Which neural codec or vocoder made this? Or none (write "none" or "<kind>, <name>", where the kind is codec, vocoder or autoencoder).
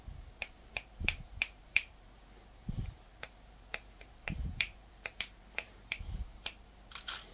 vocoder, BigVGAN v2